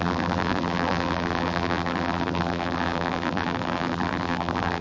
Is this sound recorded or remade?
remade